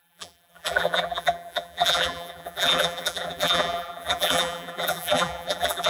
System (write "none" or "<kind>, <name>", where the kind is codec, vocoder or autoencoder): vocoder, BigVGAN v2